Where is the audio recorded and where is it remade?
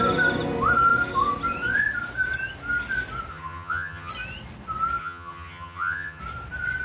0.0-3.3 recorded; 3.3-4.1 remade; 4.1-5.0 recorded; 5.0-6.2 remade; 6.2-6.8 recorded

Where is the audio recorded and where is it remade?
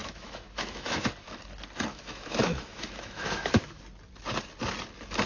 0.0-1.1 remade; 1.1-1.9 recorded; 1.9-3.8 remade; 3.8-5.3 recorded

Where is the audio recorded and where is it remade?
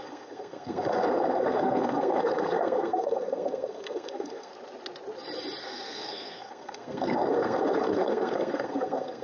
0.0-4.5 remade; 4.5-5.6 recorded; 5.6-9.2 remade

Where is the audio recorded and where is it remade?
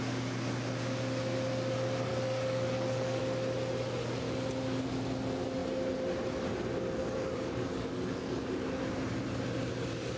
0.0-2.1 recorded; 2.1-3.2 remade; 3.2-7.0 recorded; 7.0-8.4 remade; 8.4-10.2 recorded